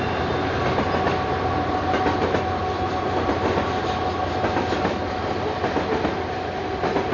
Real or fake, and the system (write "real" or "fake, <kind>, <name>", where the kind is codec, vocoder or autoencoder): real